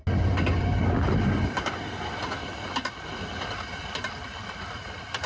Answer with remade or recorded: recorded